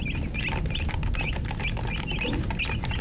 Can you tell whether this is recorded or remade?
recorded